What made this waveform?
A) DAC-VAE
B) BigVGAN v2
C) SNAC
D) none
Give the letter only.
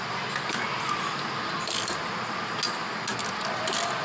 D